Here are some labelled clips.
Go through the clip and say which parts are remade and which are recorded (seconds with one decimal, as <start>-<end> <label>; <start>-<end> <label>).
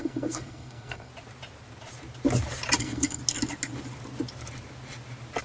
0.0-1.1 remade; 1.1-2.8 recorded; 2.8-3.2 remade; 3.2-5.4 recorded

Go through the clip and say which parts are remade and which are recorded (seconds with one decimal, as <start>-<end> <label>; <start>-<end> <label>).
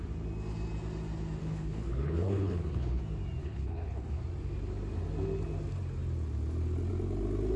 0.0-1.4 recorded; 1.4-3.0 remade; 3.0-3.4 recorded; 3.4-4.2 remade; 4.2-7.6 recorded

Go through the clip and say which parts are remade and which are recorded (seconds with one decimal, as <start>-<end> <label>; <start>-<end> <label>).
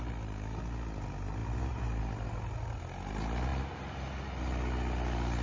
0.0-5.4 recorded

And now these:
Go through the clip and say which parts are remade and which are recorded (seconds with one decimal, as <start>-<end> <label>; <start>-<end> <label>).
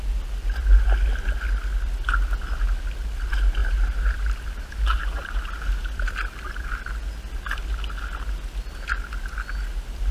0.0-3.6 recorded; 3.6-5.4 remade; 5.4-10.1 recorded